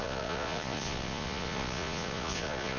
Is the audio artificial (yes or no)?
yes